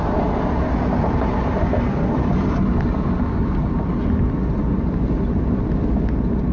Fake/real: real